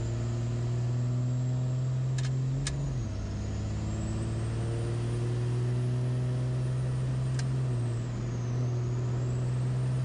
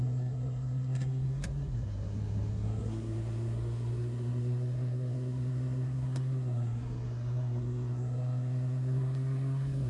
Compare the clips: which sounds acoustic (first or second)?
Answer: first